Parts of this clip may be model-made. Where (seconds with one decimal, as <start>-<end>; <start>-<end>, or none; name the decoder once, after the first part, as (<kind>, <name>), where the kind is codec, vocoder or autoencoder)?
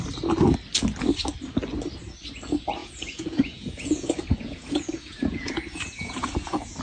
2.8-6.8 (vocoder, Vocos)